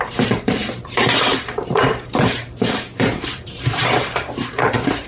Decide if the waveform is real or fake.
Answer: fake